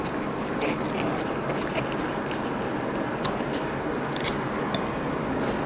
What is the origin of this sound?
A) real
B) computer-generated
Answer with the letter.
A